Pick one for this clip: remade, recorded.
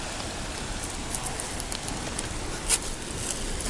recorded